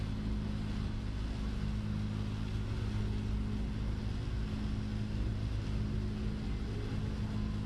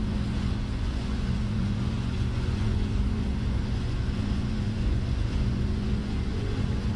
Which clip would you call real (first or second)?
first